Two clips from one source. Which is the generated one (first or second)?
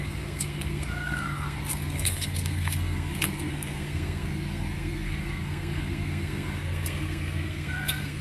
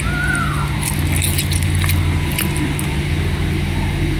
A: first